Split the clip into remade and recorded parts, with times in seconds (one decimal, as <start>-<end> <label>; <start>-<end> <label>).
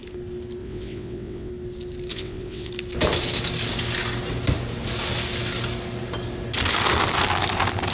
0.0-0.6 recorded; 0.6-1.5 remade; 1.5-2.1 recorded; 2.1-2.7 remade; 2.7-7.9 recorded